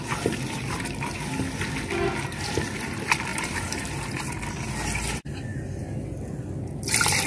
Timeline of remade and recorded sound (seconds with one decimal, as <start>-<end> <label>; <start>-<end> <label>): 0.0-3.3 recorded; 3.3-4.3 remade; 4.3-7.3 recorded